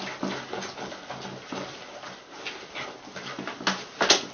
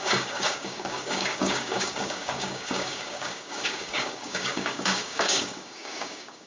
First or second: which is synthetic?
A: second